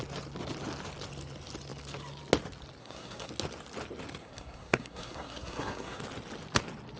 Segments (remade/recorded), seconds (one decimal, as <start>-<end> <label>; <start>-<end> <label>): 0.0-2.8 recorded; 2.8-3.3 remade; 3.3-4.2 recorded; 4.2-6.0 remade; 6.0-7.0 recorded